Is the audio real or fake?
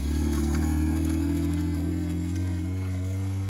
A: fake